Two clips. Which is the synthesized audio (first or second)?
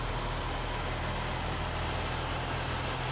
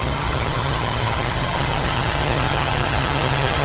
second